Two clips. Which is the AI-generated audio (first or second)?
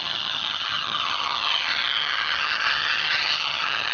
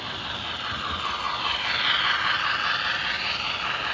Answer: first